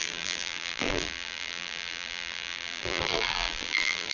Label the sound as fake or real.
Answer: fake